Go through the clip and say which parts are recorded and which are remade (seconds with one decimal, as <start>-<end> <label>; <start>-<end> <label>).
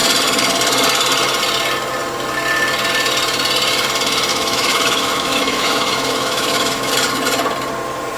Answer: 0.0-4.3 recorded; 4.3-6.9 remade; 6.9-8.2 recorded